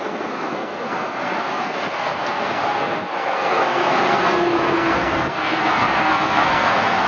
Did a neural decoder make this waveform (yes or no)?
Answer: yes